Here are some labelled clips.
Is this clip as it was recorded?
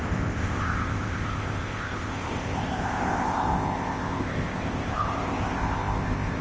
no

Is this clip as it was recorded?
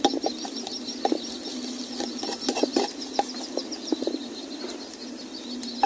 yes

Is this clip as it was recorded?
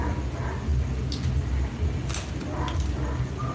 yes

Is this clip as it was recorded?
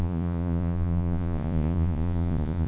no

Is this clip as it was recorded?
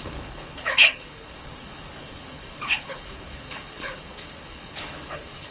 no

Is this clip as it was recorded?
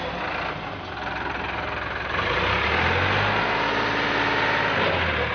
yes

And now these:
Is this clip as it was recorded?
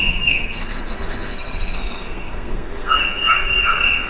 no